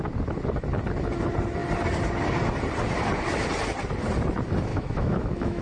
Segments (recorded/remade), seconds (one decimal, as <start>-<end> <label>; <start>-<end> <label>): 0.0-4.7 recorded; 4.7-5.6 remade